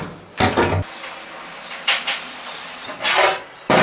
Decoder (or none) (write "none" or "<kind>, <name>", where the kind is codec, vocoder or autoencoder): none